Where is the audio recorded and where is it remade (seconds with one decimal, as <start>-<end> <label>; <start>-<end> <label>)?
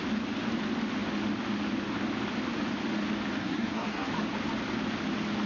0.0-3.4 recorded; 3.4-4.1 remade; 4.1-5.5 recorded